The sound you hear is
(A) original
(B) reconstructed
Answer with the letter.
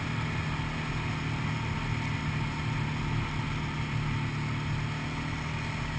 A